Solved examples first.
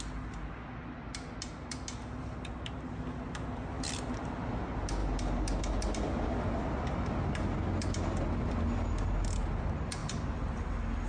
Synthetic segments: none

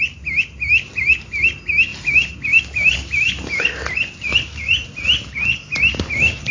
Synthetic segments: none

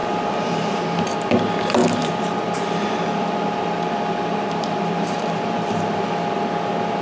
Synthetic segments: 0.0-0.8 (vocoder, BigVGAN v2); 2.0-6.1